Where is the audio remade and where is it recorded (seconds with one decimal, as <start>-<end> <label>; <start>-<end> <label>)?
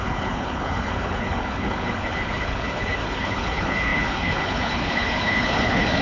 0.0-6.0 remade